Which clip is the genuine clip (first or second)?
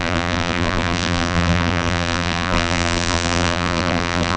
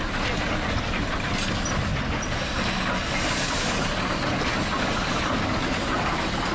second